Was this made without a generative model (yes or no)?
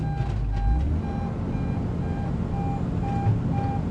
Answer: yes